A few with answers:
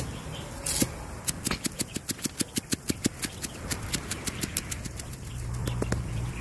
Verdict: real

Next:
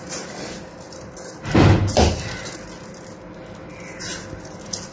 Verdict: real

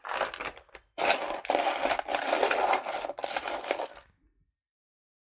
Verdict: real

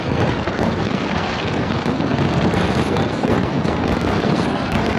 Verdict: fake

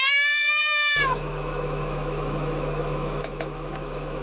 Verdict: fake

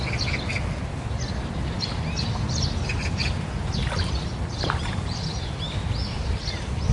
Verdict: real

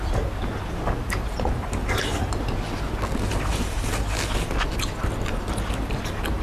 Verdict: real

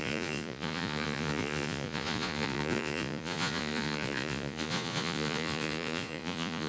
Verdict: fake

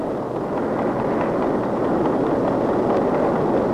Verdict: real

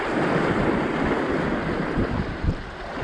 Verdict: real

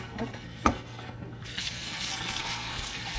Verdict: fake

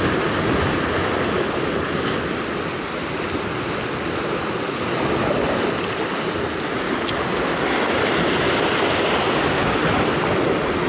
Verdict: real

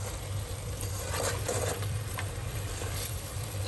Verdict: fake